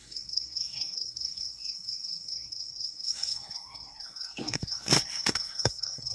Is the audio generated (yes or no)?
yes